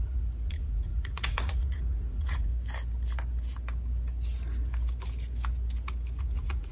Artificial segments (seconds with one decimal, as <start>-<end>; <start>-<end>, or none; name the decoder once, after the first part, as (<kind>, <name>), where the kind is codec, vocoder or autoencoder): 0.0-2.5 (vocoder, Vocos); 6.2-6.7